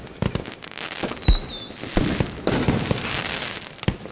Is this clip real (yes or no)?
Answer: yes